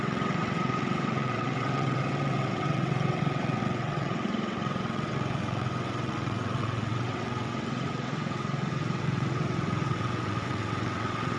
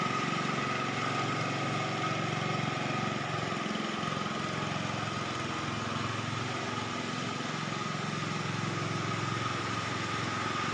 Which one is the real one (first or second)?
second